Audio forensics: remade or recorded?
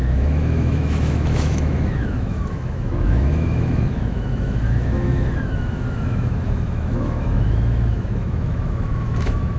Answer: remade